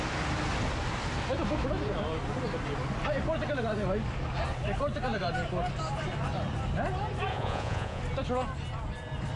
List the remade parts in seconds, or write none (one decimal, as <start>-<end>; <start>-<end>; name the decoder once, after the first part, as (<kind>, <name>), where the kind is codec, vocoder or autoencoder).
7.3-8.0 (vocoder, Vocos)

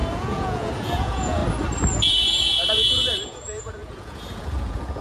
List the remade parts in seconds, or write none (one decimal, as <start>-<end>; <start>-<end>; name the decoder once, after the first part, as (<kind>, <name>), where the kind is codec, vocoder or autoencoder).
0.0-1.4 (vocoder, Vocos); 2.1-5.0

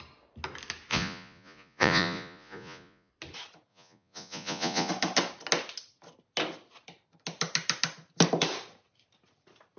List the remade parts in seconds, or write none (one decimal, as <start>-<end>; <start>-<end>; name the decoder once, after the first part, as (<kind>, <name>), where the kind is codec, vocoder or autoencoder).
0.9-3.1 (vocoder, Vocos); 3.7-4.9

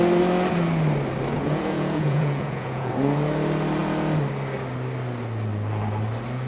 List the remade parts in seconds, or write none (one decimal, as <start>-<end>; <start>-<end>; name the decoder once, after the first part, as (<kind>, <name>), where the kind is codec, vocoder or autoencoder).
1.3-2.9 (vocoder, Vocos)

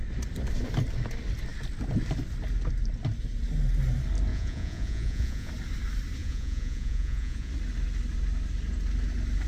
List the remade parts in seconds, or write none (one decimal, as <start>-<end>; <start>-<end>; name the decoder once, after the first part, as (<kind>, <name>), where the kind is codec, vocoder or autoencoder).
4.3-5.5 (vocoder, Vocos); 6.2-7.5

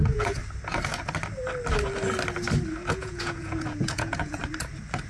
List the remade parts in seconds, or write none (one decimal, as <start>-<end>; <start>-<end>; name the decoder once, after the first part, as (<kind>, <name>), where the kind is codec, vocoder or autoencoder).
0.0-0.4 (vocoder, Vocos); 2.9-4.4

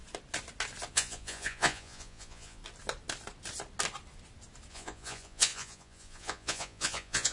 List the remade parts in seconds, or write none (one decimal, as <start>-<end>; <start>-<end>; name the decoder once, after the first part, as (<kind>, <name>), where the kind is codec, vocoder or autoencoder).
0.9-2.6 (vocoder, Vocos); 4.7-7.3